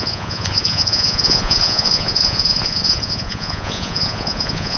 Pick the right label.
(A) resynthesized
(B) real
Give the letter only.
A